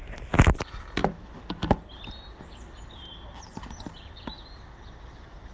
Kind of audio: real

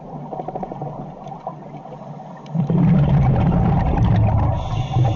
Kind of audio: real